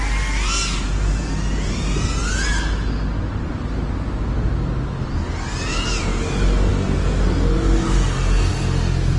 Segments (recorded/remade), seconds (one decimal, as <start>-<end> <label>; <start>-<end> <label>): 0.0-9.2 recorded